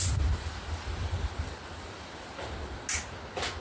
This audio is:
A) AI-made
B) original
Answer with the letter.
B